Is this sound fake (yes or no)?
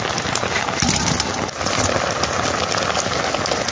no